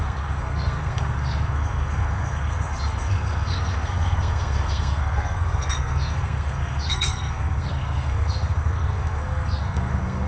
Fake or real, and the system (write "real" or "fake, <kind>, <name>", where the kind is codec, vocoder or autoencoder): fake, codec, SNAC